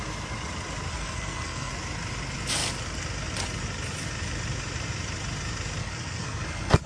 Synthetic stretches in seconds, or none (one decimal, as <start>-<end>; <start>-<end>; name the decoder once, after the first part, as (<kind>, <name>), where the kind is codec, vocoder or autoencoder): 0.9-1.7 (codec, SNAC); 5.8-6.9